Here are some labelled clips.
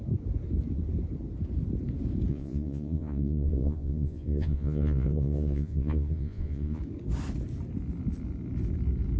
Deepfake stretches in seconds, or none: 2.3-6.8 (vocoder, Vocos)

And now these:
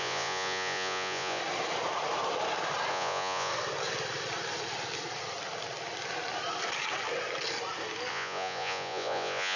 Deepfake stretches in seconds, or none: 0.0-1.4 (vocoder, Vocos); 2.9-3.5; 8.1-9.6